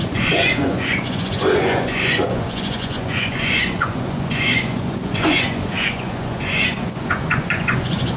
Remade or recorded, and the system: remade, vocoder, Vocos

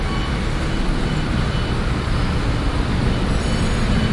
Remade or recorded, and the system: recorded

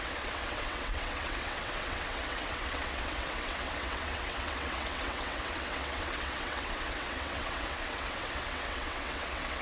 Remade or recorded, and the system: remade, vocoder, WaveNeXt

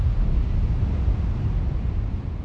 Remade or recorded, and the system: recorded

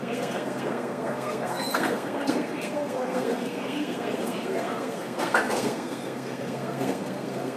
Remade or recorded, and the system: remade, codec, SNAC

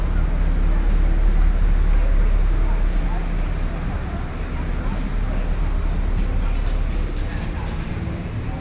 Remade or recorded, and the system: recorded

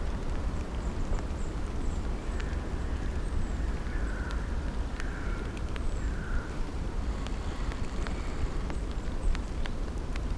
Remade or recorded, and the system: remade, vocoder, BigVGAN v2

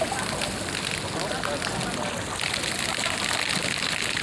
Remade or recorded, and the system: recorded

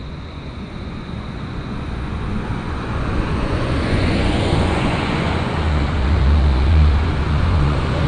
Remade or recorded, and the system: remade, vocoder, Vocos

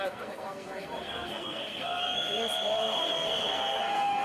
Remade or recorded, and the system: remade, codec, SNAC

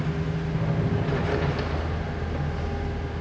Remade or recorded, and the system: recorded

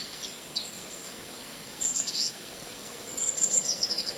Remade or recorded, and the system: remade, codec, SNAC